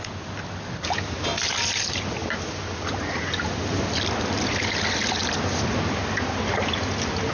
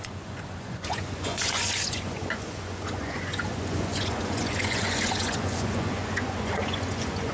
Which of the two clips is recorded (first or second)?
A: first